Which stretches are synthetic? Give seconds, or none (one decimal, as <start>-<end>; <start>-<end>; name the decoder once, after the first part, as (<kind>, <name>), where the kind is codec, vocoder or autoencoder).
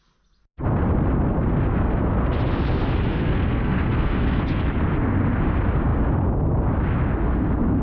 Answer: 3.1-4.6 (codec, SNAC)